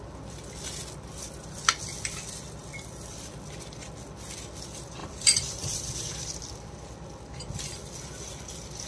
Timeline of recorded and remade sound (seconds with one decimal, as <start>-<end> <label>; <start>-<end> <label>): 0.0-5.0 recorded; 5.0-6.4 remade; 6.4-8.9 recorded